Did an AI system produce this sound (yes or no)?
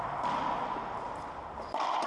no